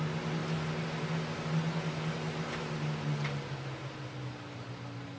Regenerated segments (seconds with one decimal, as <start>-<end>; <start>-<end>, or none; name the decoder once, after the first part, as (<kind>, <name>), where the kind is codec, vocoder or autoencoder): none